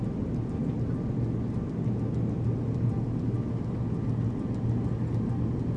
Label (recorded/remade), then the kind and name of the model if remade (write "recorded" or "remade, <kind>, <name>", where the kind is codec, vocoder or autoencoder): recorded